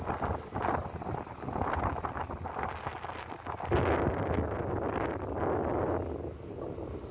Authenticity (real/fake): real